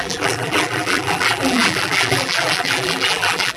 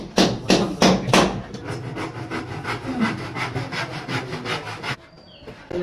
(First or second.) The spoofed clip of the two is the first